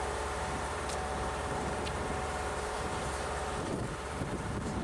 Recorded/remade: remade